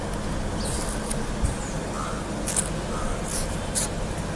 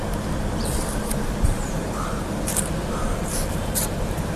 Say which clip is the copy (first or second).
second